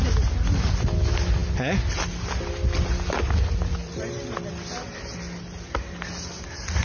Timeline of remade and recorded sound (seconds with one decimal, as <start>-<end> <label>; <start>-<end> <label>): 0.0-3.8 recorded; 3.8-4.5 remade; 4.5-6.8 recorded